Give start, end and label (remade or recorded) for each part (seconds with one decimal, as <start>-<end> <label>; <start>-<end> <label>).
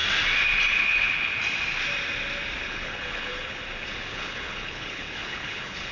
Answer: 0.0-0.7 recorded; 0.7-1.3 remade; 1.3-2.6 recorded; 2.6-3.6 remade; 3.6-4.1 recorded; 4.1-5.9 remade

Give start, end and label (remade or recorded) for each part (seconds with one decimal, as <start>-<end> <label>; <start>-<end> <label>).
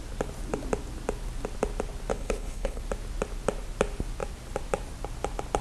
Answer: 0.0-2.1 recorded; 2.1-2.8 remade; 2.8-5.6 recorded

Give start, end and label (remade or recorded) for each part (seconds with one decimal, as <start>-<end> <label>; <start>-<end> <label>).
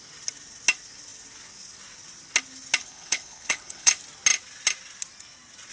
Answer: 0.0-2.8 recorded; 2.8-3.9 remade; 3.9-5.7 recorded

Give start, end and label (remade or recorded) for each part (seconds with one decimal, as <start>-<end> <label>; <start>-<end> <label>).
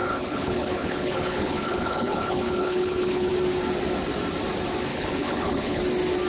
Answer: 0.0-3.3 remade; 3.3-4.9 recorded; 4.9-5.8 remade; 5.8-6.3 recorded